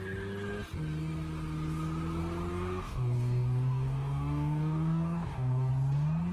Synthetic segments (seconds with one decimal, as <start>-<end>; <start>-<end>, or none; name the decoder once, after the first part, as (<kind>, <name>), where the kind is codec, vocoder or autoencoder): 2.5-5.7 (codec, DAC)